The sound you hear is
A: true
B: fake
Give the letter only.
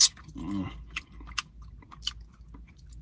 A